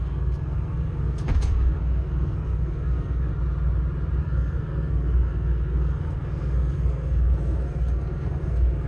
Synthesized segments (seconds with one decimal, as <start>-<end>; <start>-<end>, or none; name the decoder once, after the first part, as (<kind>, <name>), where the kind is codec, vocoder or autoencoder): 0.0-3.3 (codec, SNAC); 4.2-8.9